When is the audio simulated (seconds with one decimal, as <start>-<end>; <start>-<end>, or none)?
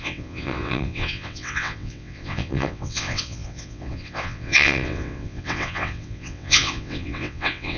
0.0-7.8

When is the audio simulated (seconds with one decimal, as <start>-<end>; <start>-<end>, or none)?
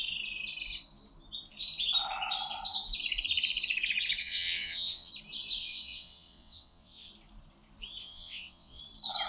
4.2-5.1; 5.6-7.1; 8.0-8.8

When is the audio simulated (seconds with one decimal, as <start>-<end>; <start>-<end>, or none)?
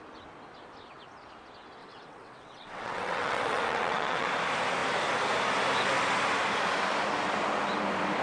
1.8-4.3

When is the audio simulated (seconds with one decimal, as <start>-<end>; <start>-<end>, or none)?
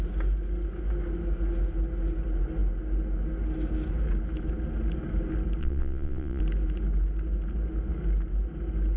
5.6-6.4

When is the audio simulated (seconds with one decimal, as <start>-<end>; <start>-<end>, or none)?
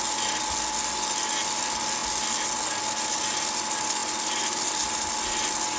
none